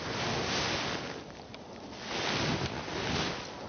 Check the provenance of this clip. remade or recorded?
recorded